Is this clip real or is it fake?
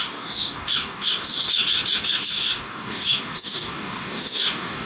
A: fake